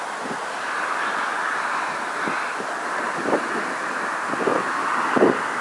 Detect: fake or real real